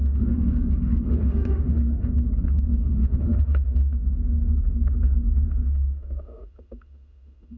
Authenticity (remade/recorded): remade